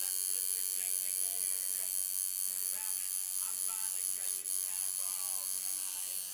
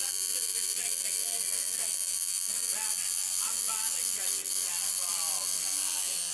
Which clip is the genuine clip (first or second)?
first